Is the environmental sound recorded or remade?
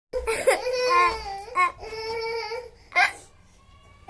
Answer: recorded